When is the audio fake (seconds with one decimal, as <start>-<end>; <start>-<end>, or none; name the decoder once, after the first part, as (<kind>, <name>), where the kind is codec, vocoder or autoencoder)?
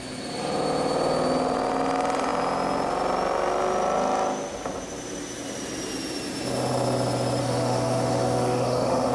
7.4-9.1 (autoencoder, DAC-VAE)